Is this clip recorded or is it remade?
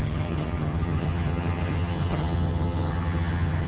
remade